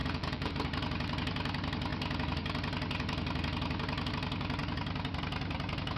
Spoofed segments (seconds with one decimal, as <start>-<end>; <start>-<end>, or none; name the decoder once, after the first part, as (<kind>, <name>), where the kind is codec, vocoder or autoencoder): 0.0-0.5 (vocoder, Vocos)